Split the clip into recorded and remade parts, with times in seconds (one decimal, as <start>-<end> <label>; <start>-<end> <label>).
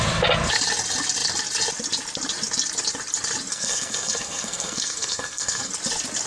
0.0-3.5 recorded; 3.5-5.7 remade; 5.7-6.3 recorded